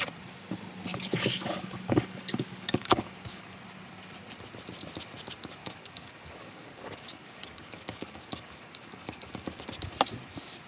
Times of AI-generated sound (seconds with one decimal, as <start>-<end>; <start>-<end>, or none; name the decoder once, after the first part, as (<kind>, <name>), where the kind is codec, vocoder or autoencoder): 0.9-3.6 (codec, DAC); 5.6-9.6